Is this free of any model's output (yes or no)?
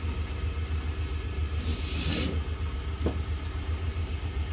no